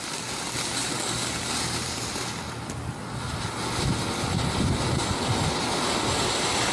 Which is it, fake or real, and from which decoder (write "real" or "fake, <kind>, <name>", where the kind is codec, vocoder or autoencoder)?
real